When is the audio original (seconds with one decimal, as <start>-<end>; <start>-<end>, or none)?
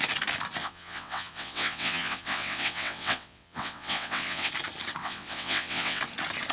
0.0-0.6; 4.5-5.0; 6.0-6.5